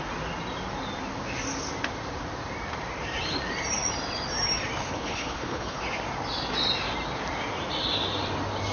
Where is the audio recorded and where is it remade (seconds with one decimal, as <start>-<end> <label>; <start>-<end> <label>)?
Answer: 0.0-4.8 recorded; 4.8-5.8 remade; 5.8-8.7 recorded